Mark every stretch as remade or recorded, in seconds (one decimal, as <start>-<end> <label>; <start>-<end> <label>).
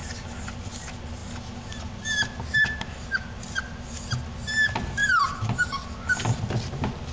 0.0-5.0 recorded; 5.0-5.8 remade; 5.8-7.1 recorded